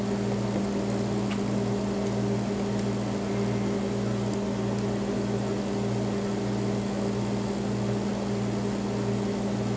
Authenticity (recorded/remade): recorded